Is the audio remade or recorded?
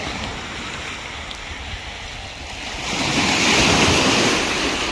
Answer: recorded